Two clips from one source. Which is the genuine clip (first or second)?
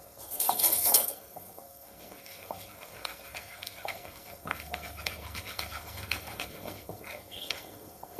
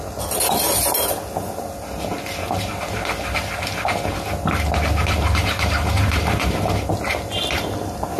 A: second